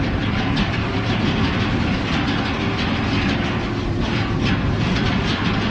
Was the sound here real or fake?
fake